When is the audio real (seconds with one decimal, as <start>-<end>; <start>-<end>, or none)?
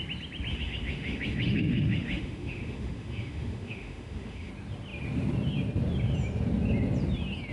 0.0-0.5; 4.5-7.5